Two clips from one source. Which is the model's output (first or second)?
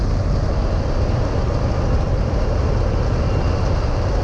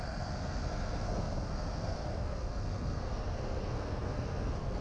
second